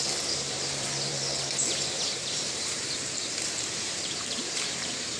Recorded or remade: remade